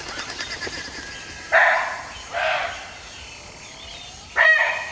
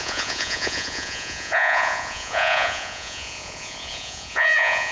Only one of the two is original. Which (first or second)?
first